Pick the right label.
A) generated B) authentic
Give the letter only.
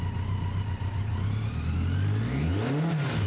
B